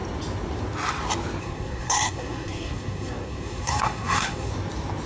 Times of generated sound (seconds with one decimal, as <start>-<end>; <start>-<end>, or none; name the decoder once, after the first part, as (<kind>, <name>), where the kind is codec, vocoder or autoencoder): 1.4-4.5 (codec, SNAC)